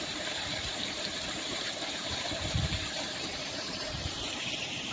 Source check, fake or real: fake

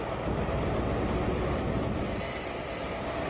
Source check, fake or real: real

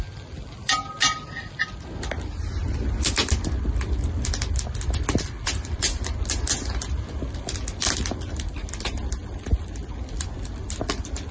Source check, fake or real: real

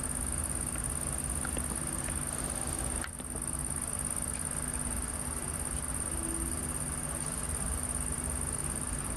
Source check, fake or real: real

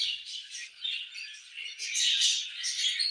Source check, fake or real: real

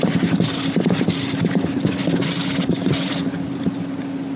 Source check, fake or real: fake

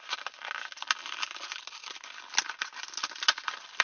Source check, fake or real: real